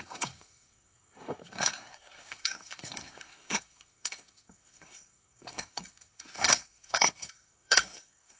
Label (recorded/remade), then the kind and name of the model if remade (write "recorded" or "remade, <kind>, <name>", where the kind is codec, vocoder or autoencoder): remade, codec, SNAC